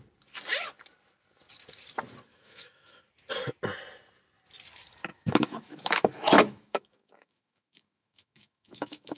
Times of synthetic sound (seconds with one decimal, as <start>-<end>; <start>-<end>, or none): 2.3-3.0; 5.1-9.2

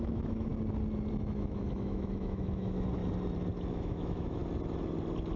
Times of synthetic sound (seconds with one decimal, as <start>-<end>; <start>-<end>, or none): 0.0-0.5; 1.1-3.0; 3.7-4.4

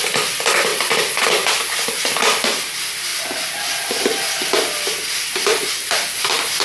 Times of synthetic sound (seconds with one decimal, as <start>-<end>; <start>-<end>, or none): none

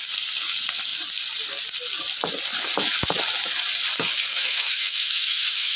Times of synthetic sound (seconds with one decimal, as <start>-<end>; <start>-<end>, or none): 4.3-5.8